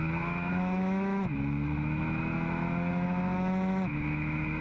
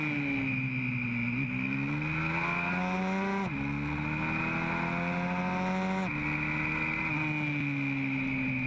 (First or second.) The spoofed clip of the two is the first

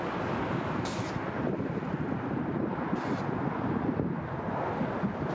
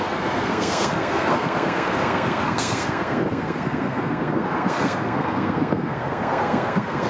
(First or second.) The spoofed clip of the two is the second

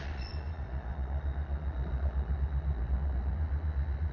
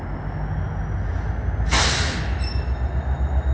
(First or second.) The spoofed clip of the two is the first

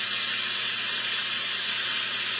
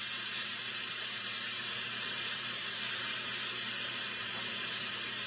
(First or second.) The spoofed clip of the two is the second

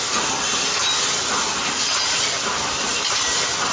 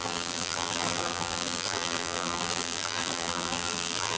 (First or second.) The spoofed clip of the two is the second